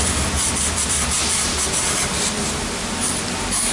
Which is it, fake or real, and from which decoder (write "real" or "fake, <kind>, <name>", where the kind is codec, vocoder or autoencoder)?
real